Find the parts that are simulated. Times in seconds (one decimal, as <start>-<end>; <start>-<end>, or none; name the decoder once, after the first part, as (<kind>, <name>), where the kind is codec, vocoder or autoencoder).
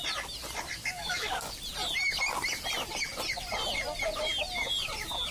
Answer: 0.8-1.6 (codec, DAC)